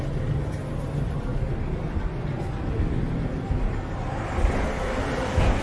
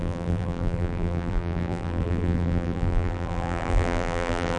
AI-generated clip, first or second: second